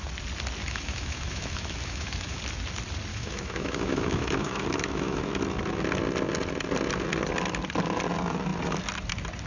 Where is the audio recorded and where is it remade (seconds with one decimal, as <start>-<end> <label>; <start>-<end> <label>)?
0.0-0.6 recorded; 0.6-2.4 remade; 2.4-3.1 recorded; 3.1-5.3 remade; 5.3-9.5 recorded